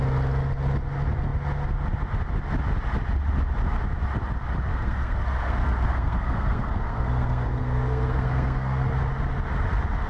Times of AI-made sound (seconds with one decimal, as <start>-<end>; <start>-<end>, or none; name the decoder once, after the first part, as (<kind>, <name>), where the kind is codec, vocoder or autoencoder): 4.7-8.9 (codec, SNAC)